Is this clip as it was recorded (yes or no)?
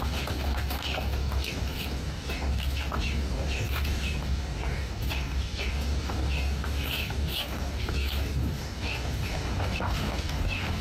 no